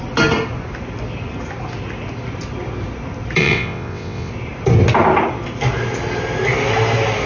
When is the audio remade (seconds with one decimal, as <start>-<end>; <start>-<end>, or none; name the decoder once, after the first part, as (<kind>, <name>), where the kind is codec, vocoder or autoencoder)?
3.4-4.3 (vocoder, WaveNeXt)